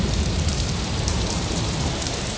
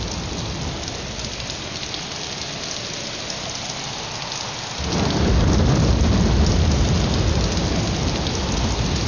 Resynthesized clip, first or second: first